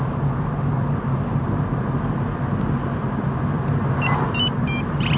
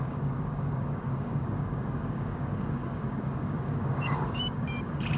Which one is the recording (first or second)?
first